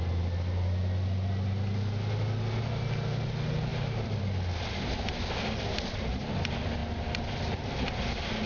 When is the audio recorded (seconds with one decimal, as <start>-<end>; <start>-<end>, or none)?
0.0-3.7; 4.2-8.5